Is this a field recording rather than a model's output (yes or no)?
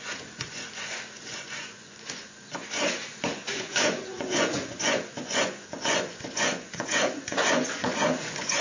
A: no